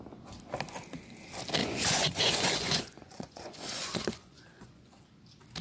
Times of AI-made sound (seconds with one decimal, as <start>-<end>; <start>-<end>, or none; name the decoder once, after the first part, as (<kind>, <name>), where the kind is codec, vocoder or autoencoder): 1.6-5.0 (vocoder, Vocos)